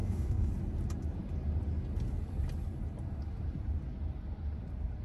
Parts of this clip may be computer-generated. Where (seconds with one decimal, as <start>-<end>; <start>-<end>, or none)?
0.0-0.5